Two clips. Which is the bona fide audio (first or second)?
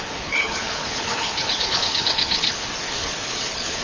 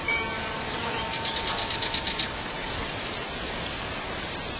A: second